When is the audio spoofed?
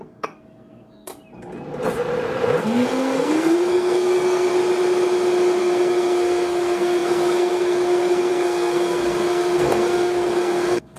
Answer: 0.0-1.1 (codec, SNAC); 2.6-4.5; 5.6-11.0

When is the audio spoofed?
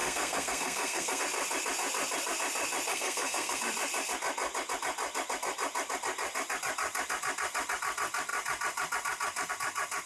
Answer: 0.0-1.2 (codec, SNAC); 2.9-3.6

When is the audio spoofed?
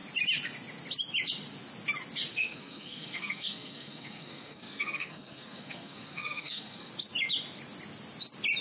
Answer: 2.3-6.9 (codec, SNAC)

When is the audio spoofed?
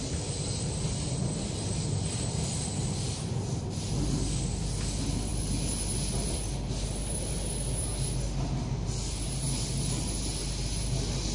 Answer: none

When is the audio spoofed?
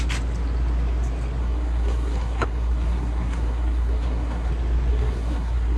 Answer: 1.4-4.5 (codec, SNAC); 4.9-5.8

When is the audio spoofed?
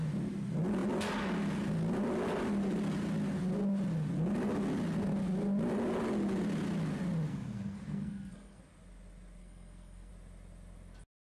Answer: 7.3-8.6 (codec, SNAC); 9.4-10.1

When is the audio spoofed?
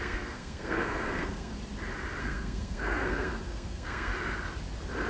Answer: 0.0-1.5 (codec, SNAC); 2.2-4.1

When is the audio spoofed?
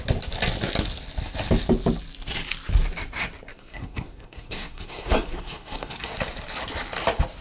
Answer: 3.5-6.1 (codec, SNAC)